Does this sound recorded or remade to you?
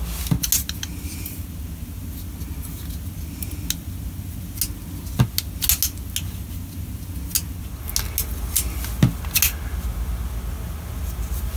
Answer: recorded